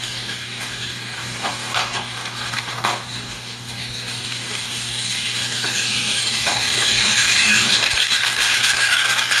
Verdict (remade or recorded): remade